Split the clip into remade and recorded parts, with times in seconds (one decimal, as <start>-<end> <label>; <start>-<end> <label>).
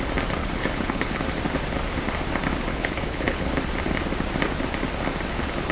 0.0-0.4 recorded; 0.4-1.2 remade; 1.2-2.7 recorded; 2.7-3.5 remade; 3.5-5.7 recorded